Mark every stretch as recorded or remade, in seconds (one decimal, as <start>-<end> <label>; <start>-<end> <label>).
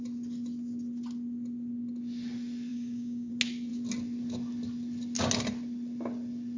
0.0-2.7 recorded; 2.7-3.3 remade; 3.3-6.6 recorded